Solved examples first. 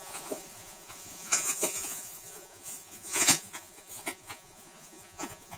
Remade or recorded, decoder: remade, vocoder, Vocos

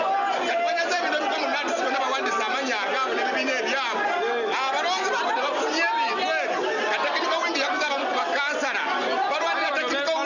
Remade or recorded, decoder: recorded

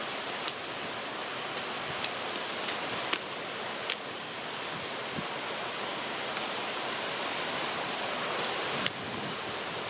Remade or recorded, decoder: recorded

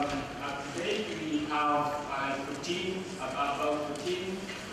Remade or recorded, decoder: recorded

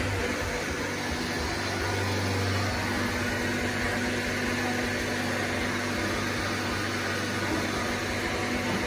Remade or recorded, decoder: recorded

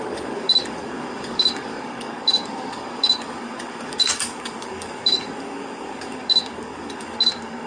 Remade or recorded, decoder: remade, codec, DAC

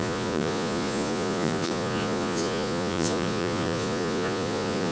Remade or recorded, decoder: remade, vocoder, Vocos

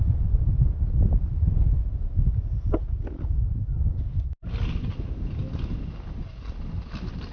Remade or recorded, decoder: recorded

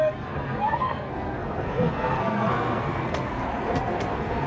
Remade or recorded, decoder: remade, codec, SNAC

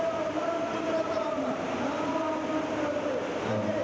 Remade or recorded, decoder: recorded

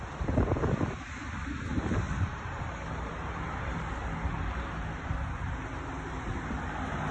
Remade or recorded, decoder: recorded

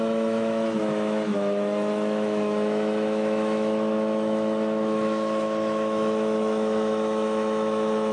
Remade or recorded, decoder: remade, autoencoder, DAC-VAE